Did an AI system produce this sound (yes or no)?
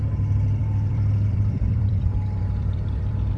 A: yes